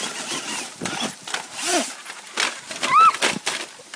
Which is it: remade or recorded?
recorded